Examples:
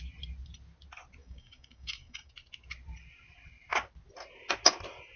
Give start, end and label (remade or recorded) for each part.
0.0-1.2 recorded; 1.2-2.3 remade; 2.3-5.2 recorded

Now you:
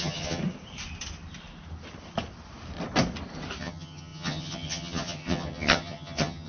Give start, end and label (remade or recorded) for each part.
0.0-0.4 remade; 0.4-3.6 recorded; 3.6-6.5 remade

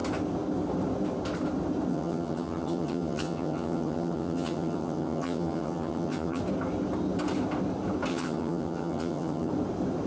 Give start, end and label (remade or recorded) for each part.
0.0-1.9 recorded; 1.9-6.4 remade; 6.4-8.1 recorded; 8.1-9.5 remade; 9.5-10.1 recorded